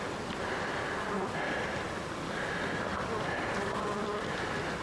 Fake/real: real